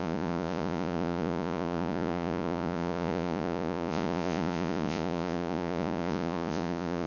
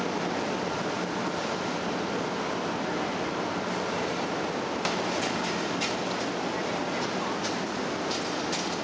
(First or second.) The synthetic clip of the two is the first